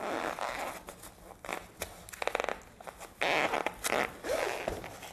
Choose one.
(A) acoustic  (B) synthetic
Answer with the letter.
A